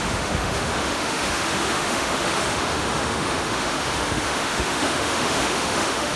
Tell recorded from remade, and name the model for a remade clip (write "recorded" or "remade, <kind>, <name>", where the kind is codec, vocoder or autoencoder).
remade, autoencoder, DAC-VAE